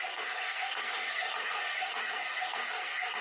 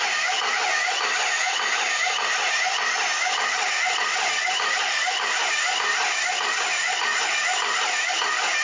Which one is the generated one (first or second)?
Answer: first